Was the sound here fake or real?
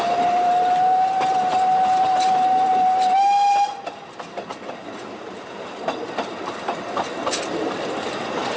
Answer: real